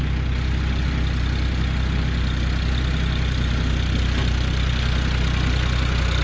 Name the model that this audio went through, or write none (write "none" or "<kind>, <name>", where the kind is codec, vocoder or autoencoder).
none